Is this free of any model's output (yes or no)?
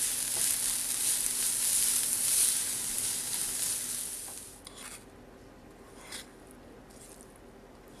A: yes